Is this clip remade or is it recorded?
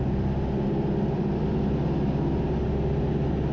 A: recorded